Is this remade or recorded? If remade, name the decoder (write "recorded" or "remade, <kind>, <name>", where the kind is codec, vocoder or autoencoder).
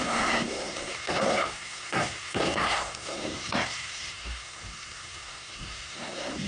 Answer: remade, codec, SNAC